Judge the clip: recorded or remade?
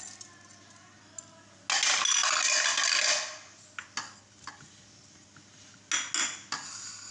recorded